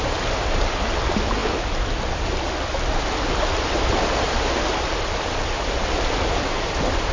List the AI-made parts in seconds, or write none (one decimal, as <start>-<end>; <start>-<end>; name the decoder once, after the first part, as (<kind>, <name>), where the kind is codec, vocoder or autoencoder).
none